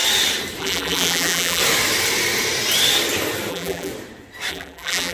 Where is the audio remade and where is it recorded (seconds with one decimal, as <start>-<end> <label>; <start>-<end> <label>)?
0.0-0.6 recorded; 0.6-1.6 remade; 1.6-3.5 recorded; 3.5-3.9 remade; 3.9-4.5 recorded; 4.5-5.1 remade